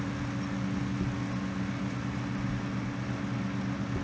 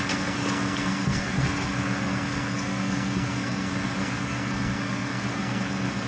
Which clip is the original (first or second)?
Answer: first